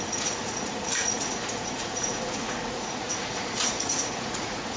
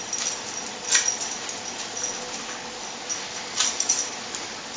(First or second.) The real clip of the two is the second